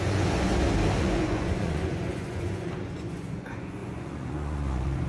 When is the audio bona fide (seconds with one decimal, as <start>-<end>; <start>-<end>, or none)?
0.5-1.0